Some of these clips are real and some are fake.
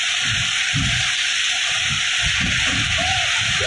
real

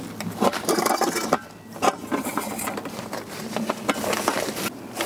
real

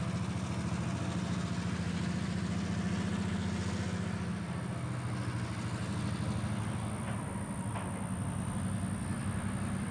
real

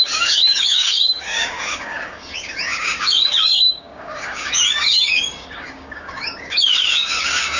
fake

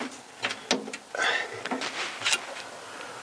real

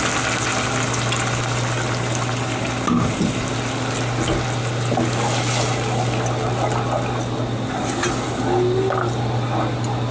real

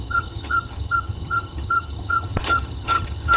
fake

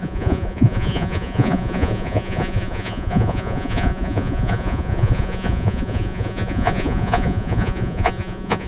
fake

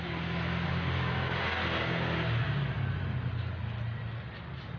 real